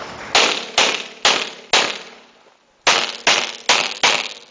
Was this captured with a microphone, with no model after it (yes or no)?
yes